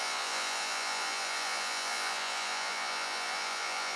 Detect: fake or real fake